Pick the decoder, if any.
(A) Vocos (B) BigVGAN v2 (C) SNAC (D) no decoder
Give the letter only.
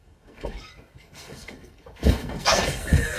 C